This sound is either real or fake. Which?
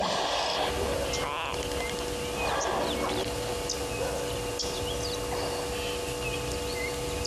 real